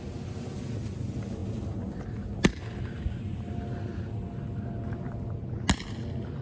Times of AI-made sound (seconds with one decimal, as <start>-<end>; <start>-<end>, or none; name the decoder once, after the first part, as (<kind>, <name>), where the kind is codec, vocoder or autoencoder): none